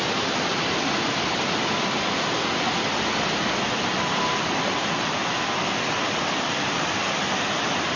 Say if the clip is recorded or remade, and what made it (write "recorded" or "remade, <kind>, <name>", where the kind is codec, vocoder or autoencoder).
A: recorded